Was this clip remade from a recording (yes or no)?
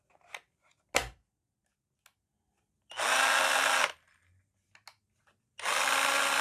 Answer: no